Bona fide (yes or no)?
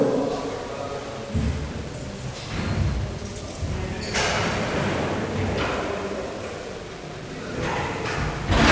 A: yes